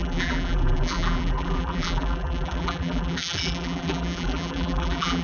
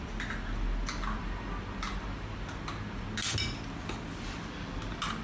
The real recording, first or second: second